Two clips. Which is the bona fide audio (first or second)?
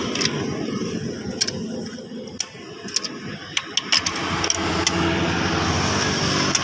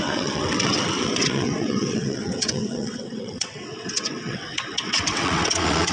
first